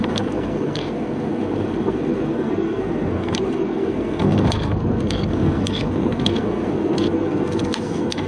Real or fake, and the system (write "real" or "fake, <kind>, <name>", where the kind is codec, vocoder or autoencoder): fake, codec, SNAC